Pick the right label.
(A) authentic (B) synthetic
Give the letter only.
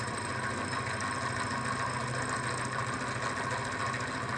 A